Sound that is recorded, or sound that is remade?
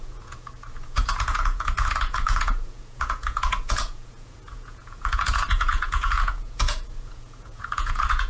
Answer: remade